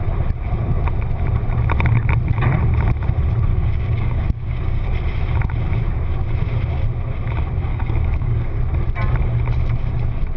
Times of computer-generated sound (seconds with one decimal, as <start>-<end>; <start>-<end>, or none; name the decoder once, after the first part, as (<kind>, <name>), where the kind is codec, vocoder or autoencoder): 3.5-4.9 (codec, DAC); 7.7-8.6